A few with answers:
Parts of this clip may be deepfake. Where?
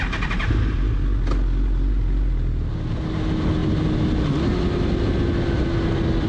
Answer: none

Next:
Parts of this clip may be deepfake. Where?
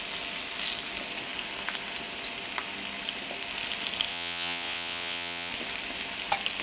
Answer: 4.1-5.5 (vocoder, WaveNeXt)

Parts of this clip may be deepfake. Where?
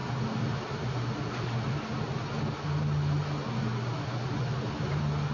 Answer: none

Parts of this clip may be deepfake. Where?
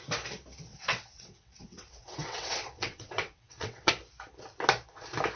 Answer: 0.7-3.9 (vocoder, WaveNeXt)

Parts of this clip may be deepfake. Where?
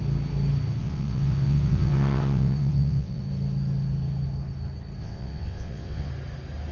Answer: 0.8-3.2 (vocoder, WaveNeXt); 5.0-6.1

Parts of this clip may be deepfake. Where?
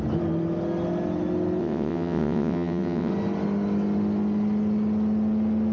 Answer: 1.6-3.1 (vocoder, WaveNeXt)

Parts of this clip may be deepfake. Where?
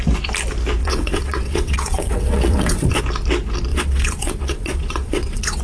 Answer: 0.8-3.0 (vocoder, WaveNeXt); 3.7-5.6